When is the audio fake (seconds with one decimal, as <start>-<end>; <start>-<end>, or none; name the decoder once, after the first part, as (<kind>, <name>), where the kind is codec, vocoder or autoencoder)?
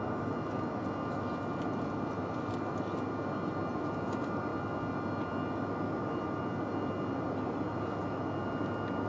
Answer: none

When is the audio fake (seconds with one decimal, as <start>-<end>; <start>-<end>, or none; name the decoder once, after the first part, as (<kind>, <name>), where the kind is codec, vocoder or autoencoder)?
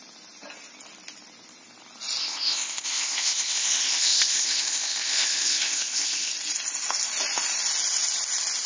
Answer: 2.2-6.3 (codec, ZipCodec)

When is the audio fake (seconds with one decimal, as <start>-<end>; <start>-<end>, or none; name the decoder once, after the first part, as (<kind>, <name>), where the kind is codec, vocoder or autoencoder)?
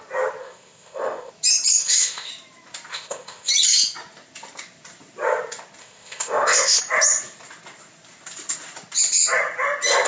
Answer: 0.4-1.3 (codec, ZipCodec); 1.8-2.3; 2.9-3.5; 5.8-6.8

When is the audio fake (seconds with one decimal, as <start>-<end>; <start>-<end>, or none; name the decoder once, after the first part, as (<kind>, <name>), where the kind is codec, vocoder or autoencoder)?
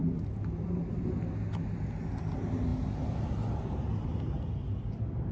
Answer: none